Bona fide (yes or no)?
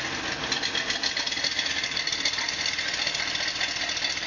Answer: no